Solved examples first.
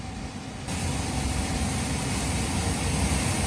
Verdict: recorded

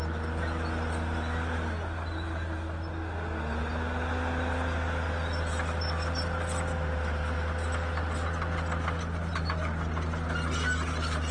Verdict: recorded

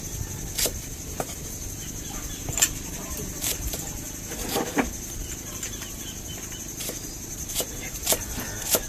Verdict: recorded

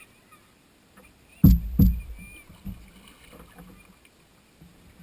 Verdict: recorded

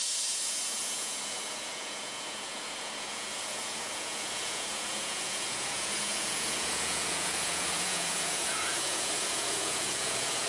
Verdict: remade